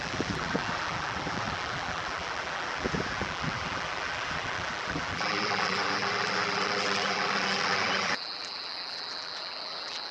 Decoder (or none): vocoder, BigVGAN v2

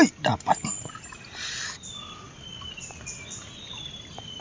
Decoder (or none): none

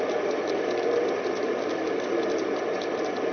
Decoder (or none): none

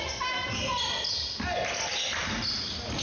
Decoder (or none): none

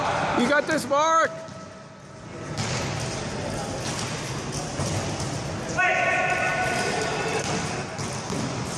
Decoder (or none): none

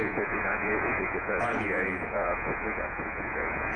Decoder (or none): vocoder, Vocos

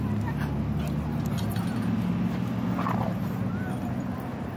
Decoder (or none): none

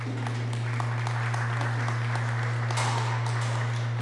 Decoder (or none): none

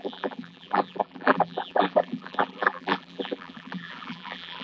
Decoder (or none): vocoder, BigVGAN v2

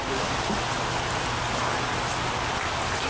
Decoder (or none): none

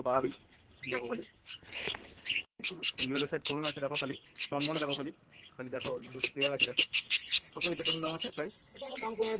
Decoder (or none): codec, SNAC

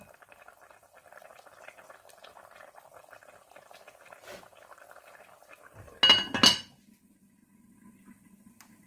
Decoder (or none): none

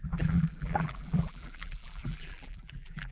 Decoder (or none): vocoder, BigVGAN v2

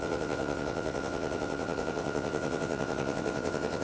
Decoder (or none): vocoder, WaveNeXt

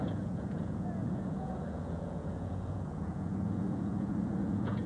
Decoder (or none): vocoder, Vocos